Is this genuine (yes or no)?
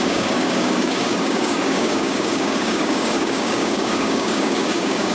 no